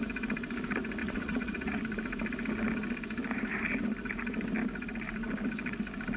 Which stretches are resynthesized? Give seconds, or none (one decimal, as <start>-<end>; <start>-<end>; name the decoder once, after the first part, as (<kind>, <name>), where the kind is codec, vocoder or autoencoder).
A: 1.0-1.8 (vocoder, Vocos)